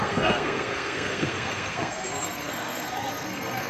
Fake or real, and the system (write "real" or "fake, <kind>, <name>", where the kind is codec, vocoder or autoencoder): fake, codec, SNAC